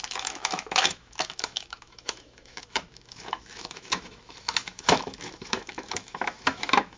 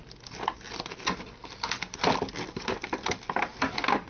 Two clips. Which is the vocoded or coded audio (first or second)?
first